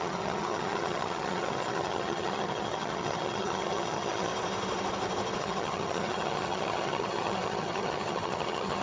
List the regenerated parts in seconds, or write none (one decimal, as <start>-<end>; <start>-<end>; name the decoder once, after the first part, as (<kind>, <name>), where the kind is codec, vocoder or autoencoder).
0.0-4.3 (vocoder, HiFi-GAN); 5.4-8.8